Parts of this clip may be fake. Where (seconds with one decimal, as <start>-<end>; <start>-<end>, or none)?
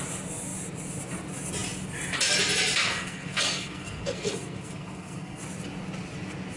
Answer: 2.8-5.4